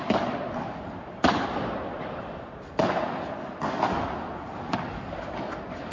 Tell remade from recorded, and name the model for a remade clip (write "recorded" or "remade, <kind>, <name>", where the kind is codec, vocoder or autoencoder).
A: recorded